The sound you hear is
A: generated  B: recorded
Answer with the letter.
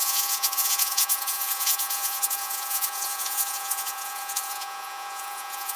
A